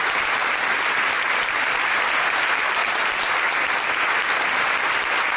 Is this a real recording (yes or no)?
yes